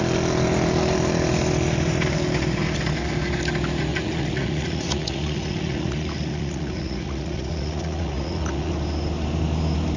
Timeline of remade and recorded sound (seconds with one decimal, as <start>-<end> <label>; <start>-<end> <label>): 0.0-3.9 recorded; 3.9-8.7 remade; 8.7-10.0 recorded